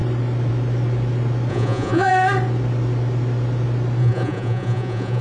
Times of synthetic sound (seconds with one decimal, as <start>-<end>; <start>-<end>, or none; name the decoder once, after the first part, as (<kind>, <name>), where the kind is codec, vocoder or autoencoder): 1.5-2.1 (vocoder, Vocos); 4.0-5.2

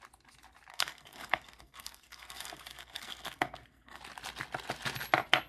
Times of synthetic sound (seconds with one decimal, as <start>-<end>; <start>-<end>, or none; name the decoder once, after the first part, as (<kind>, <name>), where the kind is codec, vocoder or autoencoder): 0.7-4.0 (codec, SNAC)

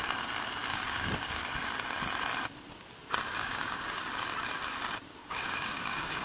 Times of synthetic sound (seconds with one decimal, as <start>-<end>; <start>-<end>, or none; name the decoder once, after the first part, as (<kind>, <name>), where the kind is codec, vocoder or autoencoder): 0.7-1.4 (codec, DAC); 3.4-4.0; 5.2-6.2

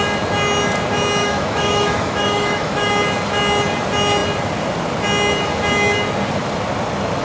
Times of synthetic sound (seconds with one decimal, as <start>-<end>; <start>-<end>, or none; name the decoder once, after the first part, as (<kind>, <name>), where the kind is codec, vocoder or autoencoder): 1.2-2.9 (autoencoder, DAC-VAE)

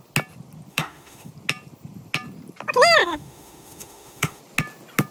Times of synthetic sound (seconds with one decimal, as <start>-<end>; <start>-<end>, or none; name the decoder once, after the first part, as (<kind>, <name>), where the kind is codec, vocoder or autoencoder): 0.7-1.3 (autoencoder, DAC-VAE); 3.0-4.4

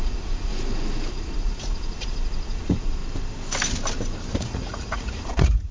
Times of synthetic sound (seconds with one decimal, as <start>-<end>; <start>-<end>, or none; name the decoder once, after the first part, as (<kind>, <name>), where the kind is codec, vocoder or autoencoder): 0.0-0.5 (vocoder, Vocos); 1.1-3.0; 4.3-5.7

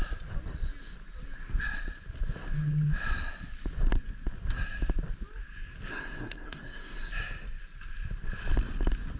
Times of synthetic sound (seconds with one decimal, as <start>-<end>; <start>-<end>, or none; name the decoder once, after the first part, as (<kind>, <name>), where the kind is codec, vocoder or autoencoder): 5.9-7.1 (codec, SNAC)